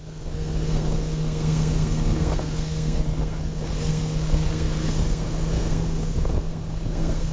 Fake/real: fake